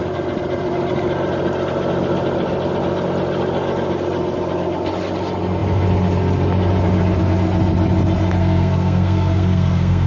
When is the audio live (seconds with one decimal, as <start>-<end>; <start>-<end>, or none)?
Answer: 0.0-8.4